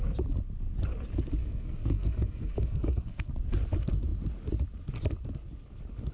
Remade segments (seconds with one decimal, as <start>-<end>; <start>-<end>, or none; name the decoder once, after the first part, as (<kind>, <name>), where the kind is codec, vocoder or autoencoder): 1.4-3.3 (codec, SNAC)